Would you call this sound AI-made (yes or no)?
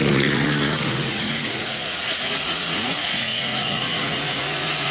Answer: yes